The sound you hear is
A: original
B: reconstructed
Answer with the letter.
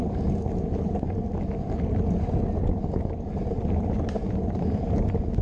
A